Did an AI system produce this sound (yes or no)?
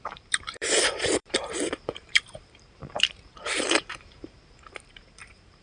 yes